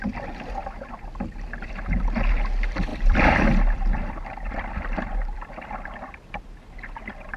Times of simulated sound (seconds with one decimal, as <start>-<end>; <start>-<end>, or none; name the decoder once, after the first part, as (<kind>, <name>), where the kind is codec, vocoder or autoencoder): 2.9-7.4 (vocoder, BigVGAN v2)